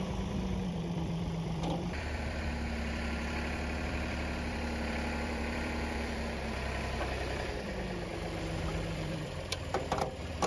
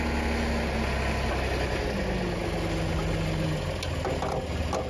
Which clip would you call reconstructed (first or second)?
first